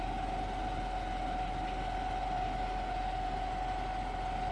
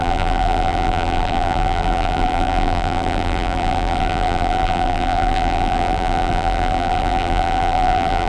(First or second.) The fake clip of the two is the second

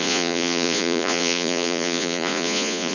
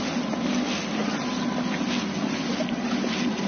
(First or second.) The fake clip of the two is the first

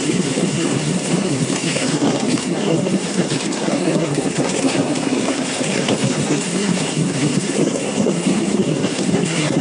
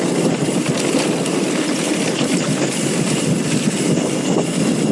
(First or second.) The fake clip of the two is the first